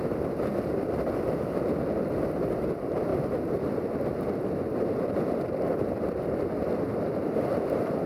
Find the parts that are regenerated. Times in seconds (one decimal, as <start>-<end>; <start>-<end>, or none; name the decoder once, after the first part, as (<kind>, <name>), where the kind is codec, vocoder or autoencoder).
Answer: 0.0-3.1 (vocoder, BigVGAN v2); 5.6-8.1